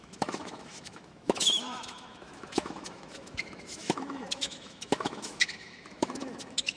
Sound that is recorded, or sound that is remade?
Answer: remade